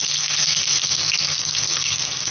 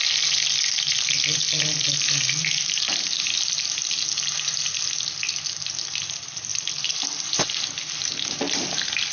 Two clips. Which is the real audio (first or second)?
second